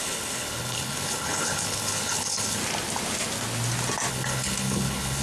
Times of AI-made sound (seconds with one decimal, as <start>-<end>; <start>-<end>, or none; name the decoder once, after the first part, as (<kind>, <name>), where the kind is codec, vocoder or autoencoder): 0.0-2.6 (codec, HILCodec); 4.1-5.2